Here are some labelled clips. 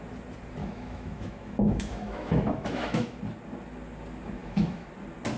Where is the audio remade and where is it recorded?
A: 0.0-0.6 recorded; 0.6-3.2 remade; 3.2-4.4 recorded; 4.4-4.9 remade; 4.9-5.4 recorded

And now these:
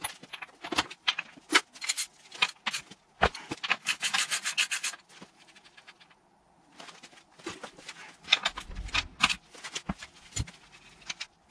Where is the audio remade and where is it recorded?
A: 0.0-3.7 recorded; 3.7-4.3 remade; 4.3-11.5 recorded

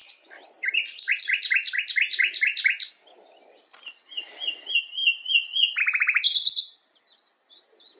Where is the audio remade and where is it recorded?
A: 0.0-1.1 remade; 1.1-8.0 recorded